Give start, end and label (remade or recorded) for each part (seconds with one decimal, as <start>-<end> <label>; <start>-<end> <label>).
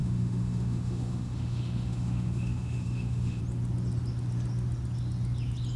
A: 0.0-3.4 remade; 3.4-5.8 recorded